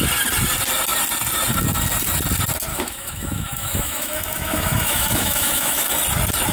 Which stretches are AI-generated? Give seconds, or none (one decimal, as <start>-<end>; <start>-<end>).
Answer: 2.7-5.9